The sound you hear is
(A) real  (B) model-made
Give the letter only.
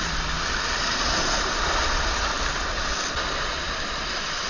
A